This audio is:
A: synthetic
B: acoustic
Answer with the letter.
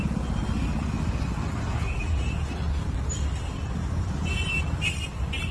B